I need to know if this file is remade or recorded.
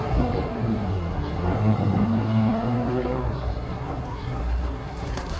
remade